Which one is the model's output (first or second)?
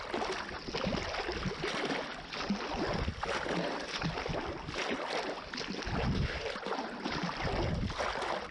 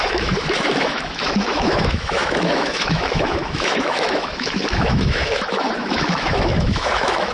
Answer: second